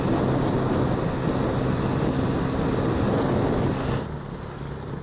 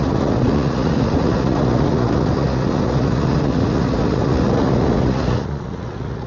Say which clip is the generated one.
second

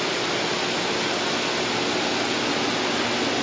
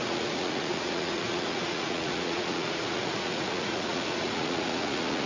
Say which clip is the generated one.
second